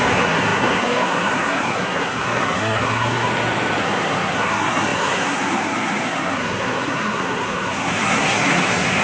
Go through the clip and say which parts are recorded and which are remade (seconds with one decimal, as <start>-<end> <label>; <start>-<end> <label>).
0.0-3.3 remade; 3.3-3.8 recorded; 3.8-9.0 remade